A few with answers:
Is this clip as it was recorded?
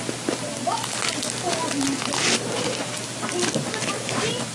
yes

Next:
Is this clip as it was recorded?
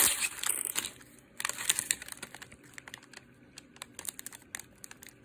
yes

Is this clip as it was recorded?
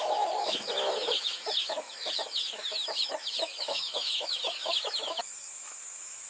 no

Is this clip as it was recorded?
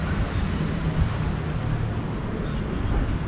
yes